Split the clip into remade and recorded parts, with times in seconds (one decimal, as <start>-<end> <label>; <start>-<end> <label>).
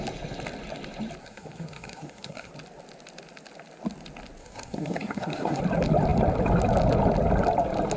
0.0-1.2 recorded; 1.2-2.5 remade; 2.5-4.4 recorded; 4.4-5.6 remade; 5.6-8.0 recorded